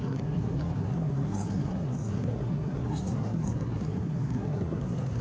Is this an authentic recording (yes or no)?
no